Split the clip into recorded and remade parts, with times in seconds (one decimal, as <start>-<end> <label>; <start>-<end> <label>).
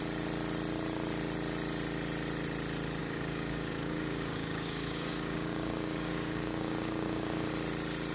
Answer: 0.0-3.0 recorded; 3.0-7.5 remade; 7.5-8.1 recorded